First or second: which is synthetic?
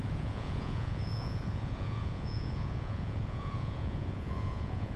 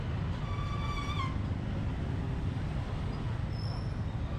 first